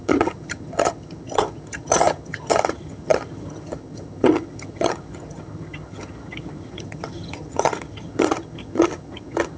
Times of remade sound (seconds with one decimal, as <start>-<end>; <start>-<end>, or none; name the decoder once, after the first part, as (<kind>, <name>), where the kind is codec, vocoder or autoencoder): 0.0-9.6 (vocoder, HiFi-GAN)